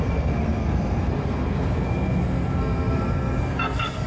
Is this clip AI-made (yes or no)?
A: yes